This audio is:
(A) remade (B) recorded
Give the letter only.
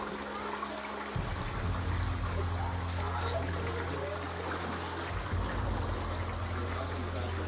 B